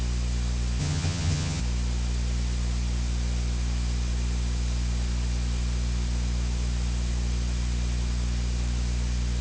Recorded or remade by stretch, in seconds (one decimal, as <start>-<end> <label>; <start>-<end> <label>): 0.0-0.8 recorded; 0.8-1.6 remade; 1.6-9.4 recorded